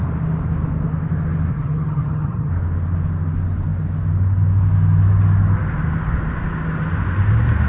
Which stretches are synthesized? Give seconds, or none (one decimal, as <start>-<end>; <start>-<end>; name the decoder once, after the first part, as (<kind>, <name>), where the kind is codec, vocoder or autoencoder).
1.5-2.5 (vocoder, HiFi-GAN)